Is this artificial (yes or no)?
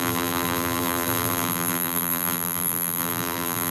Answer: yes